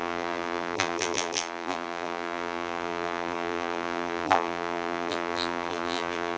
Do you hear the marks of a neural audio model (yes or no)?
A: yes